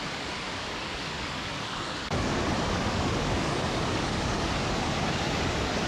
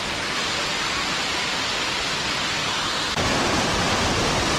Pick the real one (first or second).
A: second